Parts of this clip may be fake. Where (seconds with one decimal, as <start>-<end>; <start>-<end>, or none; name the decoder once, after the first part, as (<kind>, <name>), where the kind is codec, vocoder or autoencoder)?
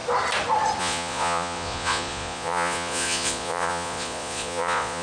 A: 0.8-5.0 (vocoder, Vocos)